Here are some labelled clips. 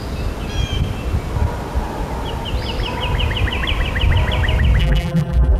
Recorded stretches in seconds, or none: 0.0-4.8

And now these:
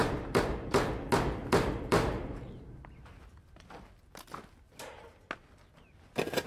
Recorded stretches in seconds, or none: 0.9-1.4; 2.8-6.5

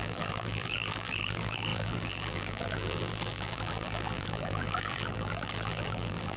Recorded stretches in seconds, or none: none